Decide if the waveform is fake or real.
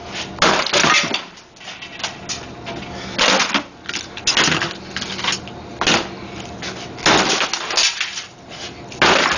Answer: real